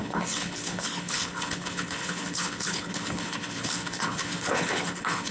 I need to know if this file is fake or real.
fake